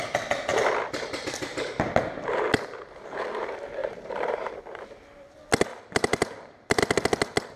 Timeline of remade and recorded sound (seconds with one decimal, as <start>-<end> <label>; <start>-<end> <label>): 0.0-3.8 recorded; 3.8-4.5 remade; 4.5-5.7 recorded; 5.7-6.8 remade; 6.8-7.6 recorded